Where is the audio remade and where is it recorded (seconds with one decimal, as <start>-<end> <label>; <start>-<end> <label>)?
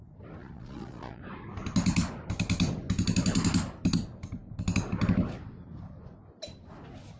0.0-0.4 recorded; 0.4-1.2 remade; 1.2-7.2 recorded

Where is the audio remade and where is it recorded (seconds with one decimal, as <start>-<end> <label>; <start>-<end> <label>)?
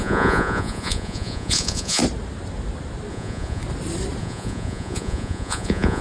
0.0-2.0 remade; 2.0-3.1 recorded; 3.1-3.6 remade; 3.6-4.2 recorded; 4.2-6.0 remade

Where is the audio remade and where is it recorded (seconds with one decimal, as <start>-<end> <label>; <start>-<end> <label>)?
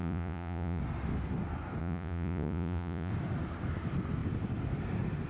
0.0-0.8 remade; 0.8-1.8 recorded; 1.8-3.1 remade; 3.1-5.3 recorded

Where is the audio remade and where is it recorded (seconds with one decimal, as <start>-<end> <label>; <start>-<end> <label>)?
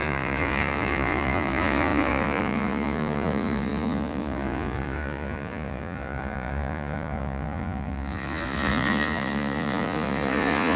0.0-10.8 remade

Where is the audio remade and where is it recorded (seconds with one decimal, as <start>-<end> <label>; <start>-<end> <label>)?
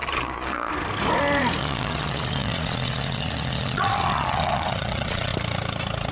0.0-0.7 remade; 0.7-1.6 recorded; 1.6-5.3 remade; 5.3-6.1 recorded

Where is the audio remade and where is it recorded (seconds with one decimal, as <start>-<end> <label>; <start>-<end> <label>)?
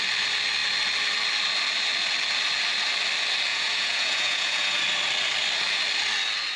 0.0-3.5 recorded; 3.5-4.8 remade; 4.8-6.6 recorded